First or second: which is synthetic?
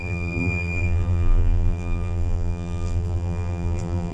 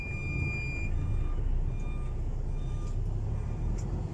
first